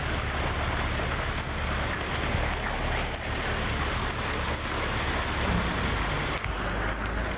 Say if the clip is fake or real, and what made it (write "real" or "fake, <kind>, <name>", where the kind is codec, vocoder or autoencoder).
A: real